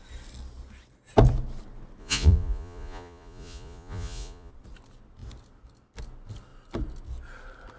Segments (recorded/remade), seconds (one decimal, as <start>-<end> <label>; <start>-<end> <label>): 0.0-2.0 recorded; 2.0-4.5 remade; 4.5-7.8 recorded